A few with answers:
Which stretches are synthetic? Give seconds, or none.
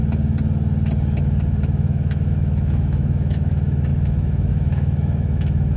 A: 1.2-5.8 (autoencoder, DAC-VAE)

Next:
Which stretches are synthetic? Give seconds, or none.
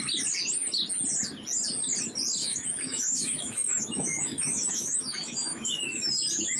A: 2.4-6.1 (autoencoder, DAC-VAE)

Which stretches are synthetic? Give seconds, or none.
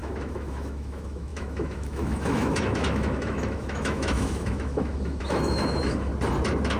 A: 0.0-6.1 (autoencoder, DAC-VAE)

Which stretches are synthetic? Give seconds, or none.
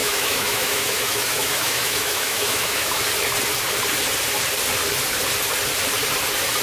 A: 0.0-3.0 (autoencoder, DAC-VAE)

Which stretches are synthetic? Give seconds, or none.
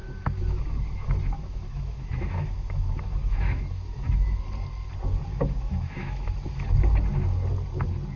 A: 0.0-4.4 (autoencoder, DAC-VAE); 5.3-6.5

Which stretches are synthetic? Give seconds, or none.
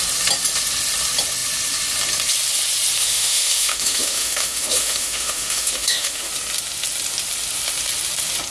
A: 3.0-6.3 (autoencoder, DAC-VAE)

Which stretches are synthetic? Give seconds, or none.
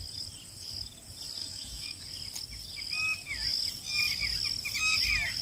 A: 1.4-2.0 (autoencoder, DAC-VAE)